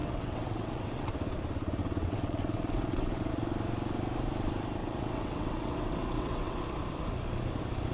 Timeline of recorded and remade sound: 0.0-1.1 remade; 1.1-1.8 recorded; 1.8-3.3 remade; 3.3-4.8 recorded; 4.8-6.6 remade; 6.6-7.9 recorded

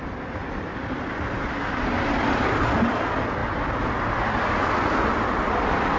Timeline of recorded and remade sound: 0.0-6.0 recorded

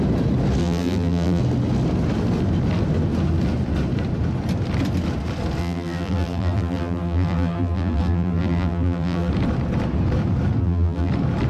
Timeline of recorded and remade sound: 0.0-0.6 recorded; 0.6-1.4 remade; 1.4-5.6 recorded; 5.6-9.3 remade; 9.3-10.6 recorded; 10.6-11.1 remade; 11.1-11.5 recorded

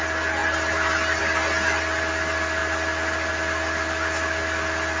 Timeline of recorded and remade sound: 0.0-5.0 recorded